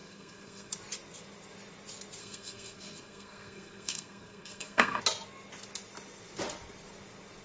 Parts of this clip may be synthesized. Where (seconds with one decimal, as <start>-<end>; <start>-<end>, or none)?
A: 0.0-0.7; 2.2-5.0